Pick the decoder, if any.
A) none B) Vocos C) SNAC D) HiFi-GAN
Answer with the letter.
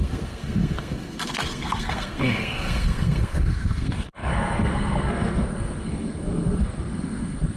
C